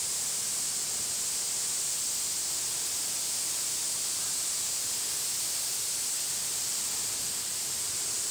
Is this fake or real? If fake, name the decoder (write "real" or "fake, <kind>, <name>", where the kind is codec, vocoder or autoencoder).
real